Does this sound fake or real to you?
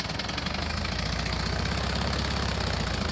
real